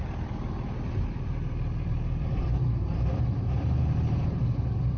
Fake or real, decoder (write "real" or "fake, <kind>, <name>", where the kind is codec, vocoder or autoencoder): fake, vocoder, BigVGAN v2